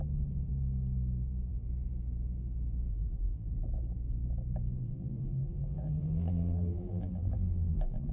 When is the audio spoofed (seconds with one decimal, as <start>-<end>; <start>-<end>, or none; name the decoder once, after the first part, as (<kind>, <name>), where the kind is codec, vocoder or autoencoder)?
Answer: 2.9-3.5 (vocoder, BigVGAN v2); 4.8-8.1